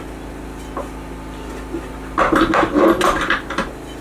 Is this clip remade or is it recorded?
recorded